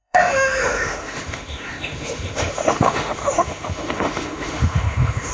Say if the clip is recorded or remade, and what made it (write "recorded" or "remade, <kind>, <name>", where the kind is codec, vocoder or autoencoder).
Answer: remade, autoencoder, DAC-VAE